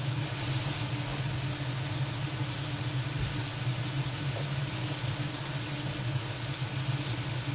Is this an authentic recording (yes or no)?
yes